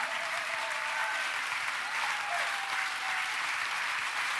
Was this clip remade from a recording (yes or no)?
yes